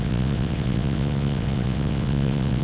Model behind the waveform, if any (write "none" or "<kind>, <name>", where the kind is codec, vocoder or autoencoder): vocoder, WaveNeXt